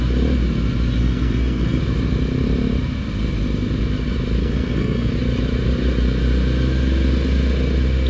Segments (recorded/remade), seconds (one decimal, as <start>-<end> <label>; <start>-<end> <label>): 0.0-1.0 recorded; 1.0-1.8 remade; 1.8-4.4 recorded; 4.4-5.1 remade; 5.1-8.1 recorded